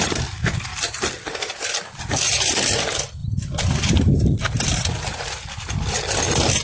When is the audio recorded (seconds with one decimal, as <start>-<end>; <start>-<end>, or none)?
0.0-0.7; 2.0-3.2; 4.4-6.6